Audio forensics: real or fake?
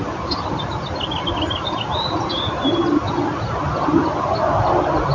real